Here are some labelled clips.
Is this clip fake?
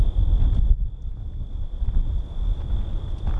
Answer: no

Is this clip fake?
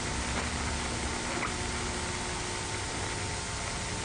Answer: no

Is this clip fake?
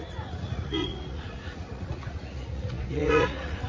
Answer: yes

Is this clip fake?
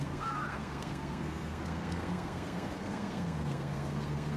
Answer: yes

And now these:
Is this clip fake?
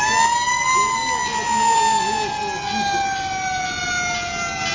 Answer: no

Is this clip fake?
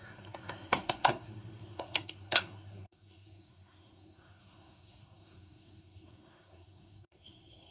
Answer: yes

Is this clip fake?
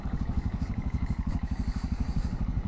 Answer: yes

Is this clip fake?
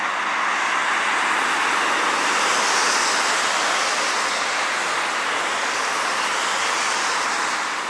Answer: no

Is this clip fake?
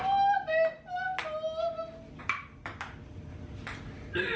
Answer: no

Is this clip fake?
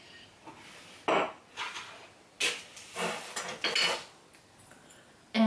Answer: no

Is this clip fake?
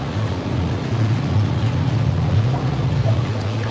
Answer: yes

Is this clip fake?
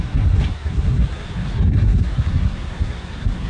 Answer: yes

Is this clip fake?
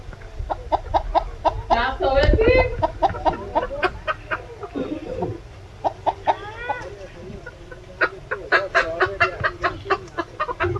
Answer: no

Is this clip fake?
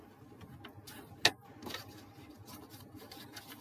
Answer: no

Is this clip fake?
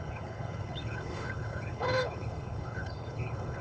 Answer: yes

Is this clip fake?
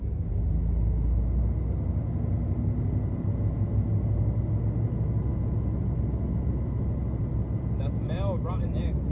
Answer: no